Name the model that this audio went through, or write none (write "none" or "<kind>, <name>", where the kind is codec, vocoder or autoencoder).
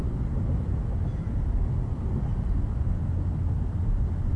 none